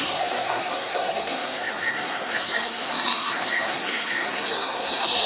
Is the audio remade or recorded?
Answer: remade